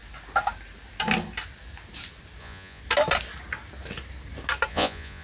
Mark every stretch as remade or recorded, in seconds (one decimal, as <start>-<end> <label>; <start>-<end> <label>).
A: 0.0-2.4 recorded; 2.4-2.8 remade; 2.8-4.7 recorded; 4.7-5.2 remade